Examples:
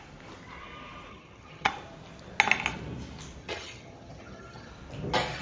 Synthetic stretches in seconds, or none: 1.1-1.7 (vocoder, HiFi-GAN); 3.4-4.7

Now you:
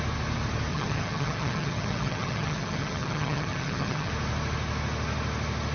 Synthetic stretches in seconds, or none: 0.7-4.1 (vocoder, HiFi-GAN)

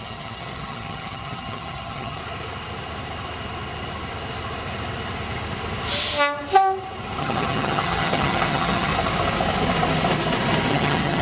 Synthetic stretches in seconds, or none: 0.0-2.2 (vocoder, HiFi-GAN); 7.2-8.9; 10.7-11.2

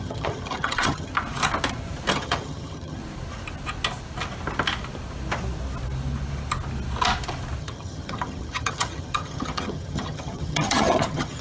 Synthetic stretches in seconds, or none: 0.0-1.1 (vocoder, HiFi-GAN); 2.1-3.0; 7.6-11.4

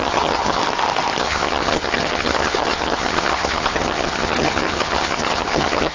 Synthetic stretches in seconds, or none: 0.0-0.6 (vocoder, HiFi-GAN); 1.2-5.9

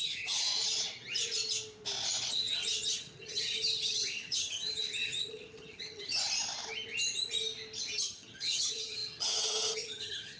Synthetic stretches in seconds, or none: 0.0-0.5 (vocoder, HiFi-GAN); 2.3-6.1; 8.0-10.4

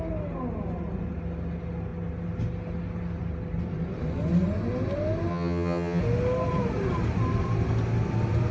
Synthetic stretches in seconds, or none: 5.3-6.0 (vocoder, HiFi-GAN)

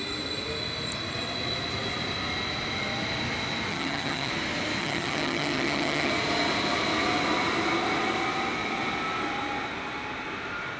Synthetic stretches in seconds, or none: 3.7-4.3 (vocoder, HiFi-GAN); 4.8-6.1